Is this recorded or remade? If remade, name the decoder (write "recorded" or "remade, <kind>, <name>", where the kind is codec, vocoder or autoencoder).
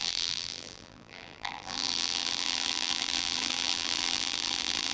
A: remade, vocoder, BigVGAN v2